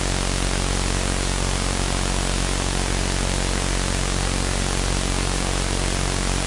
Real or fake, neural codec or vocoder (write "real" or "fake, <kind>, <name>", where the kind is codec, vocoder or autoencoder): real